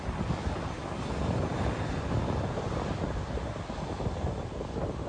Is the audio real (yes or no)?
yes